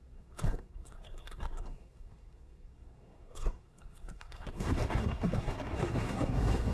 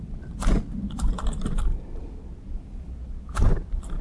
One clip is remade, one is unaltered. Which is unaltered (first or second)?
second